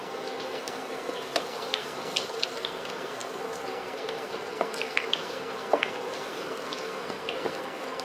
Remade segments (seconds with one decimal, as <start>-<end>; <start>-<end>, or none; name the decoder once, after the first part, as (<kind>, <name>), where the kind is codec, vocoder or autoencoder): 0.0-8.0 (codec, SNAC)